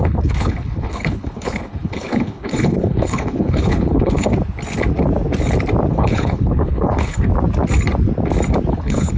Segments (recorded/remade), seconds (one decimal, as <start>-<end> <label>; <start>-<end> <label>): 0.0-4.3 remade; 4.3-5.9 recorded; 5.9-7.3 remade; 7.3-8.7 recorded; 8.7-9.2 remade